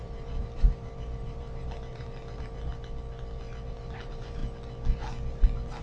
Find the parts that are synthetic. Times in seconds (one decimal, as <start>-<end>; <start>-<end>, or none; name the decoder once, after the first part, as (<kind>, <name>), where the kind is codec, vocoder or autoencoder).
0.0-2.7 (vocoder, BigVGAN v2); 3.7-4.4